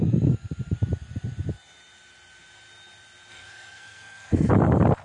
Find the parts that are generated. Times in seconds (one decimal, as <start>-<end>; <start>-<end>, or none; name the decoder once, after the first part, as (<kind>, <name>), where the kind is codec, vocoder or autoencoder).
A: 3.3-4.5 (codec, SNAC)